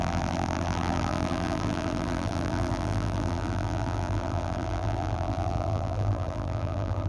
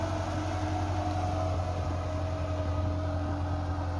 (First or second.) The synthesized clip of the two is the first